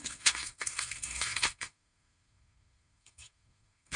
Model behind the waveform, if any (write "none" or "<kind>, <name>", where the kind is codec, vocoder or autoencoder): codec, SNAC